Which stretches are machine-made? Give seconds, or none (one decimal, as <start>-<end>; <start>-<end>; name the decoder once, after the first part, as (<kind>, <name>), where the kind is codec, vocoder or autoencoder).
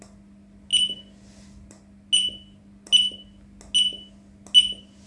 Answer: none